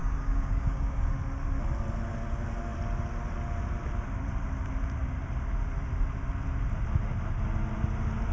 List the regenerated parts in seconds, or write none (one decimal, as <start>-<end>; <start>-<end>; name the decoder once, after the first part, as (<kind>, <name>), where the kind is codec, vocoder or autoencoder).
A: 0.0-1.1 (codec, DAC)

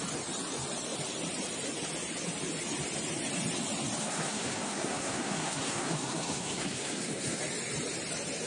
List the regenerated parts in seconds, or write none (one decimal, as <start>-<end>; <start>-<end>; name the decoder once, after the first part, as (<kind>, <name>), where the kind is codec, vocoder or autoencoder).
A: 4.0-7.4 (codec, SNAC)

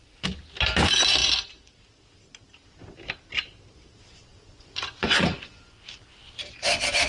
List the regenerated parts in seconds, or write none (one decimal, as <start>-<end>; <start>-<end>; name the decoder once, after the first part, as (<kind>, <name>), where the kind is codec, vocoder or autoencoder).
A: 4.3-6.3 (vocoder, Vocos)

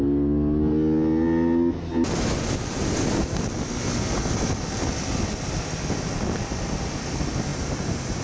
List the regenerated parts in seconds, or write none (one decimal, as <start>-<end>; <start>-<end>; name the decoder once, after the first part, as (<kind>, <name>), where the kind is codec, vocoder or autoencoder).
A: 7.5-8.2 (vocoder, BigVGAN v2)

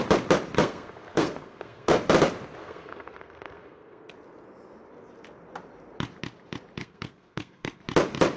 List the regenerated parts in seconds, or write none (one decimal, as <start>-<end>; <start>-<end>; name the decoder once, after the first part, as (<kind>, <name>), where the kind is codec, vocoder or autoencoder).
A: 0.6-1.9 (codec, SNAC); 2.6-4.1; 6.8-7.8